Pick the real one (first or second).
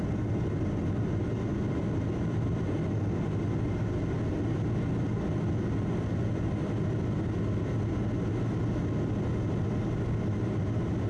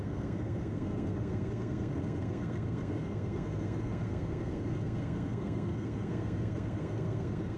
first